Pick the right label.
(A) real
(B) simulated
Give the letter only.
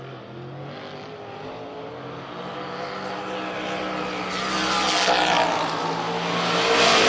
A